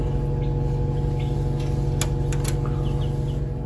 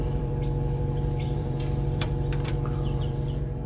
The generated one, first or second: second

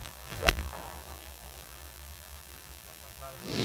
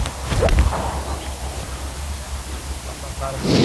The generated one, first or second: first